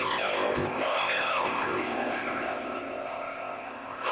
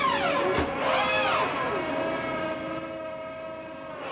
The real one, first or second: second